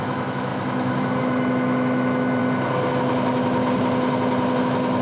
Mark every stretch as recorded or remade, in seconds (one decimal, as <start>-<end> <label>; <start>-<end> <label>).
0.0-2.4 remade; 2.4-2.9 recorded; 2.9-3.6 remade; 3.6-4.6 recorded; 4.6-5.0 remade